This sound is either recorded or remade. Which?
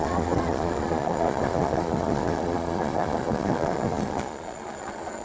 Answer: remade